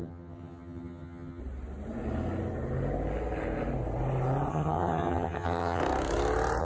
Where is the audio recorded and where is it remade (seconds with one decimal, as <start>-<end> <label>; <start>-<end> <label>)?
0.0-1.4 remade; 1.4-4.5 recorded; 4.5-5.8 remade; 5.8-6.6 recorded